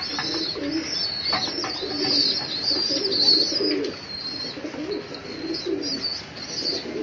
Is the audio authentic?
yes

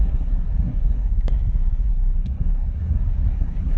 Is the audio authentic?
no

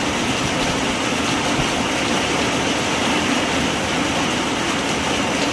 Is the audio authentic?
yes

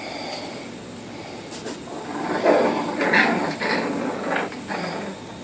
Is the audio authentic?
yes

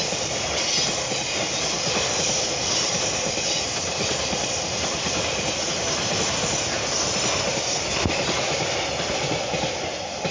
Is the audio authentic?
yes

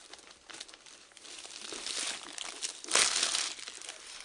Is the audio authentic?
yes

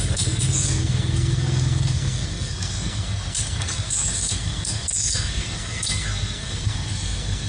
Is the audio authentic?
no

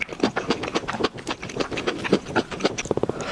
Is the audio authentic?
yes